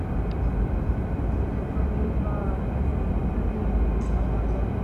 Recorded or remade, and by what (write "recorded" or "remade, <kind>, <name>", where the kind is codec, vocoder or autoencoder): recorded